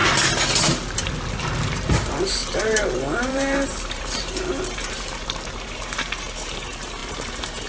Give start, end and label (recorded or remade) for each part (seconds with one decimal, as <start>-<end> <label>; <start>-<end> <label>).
0.0-1.4 recorded; 1.4-7.7 remade